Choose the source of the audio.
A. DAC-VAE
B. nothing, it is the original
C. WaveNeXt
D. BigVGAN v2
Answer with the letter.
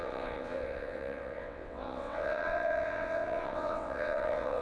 C